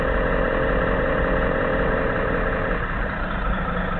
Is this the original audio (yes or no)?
no